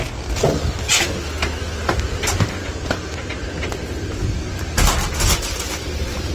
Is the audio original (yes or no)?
yes